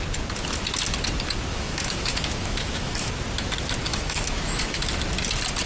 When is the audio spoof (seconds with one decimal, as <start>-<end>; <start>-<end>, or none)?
1.5-3.1; 3.9-4.9